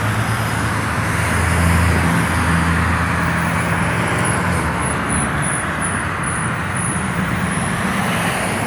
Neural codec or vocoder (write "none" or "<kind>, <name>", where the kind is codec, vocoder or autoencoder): none